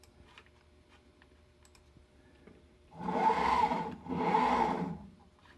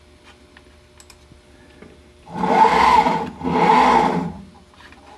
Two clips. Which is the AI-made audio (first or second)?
first